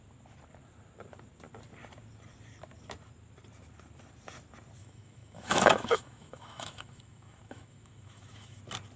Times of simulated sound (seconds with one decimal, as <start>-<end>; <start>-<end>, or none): 4.8-8.6